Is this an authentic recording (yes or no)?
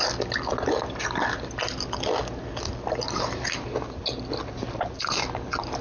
yes